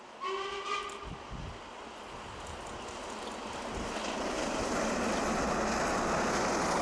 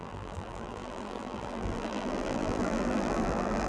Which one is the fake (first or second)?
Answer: second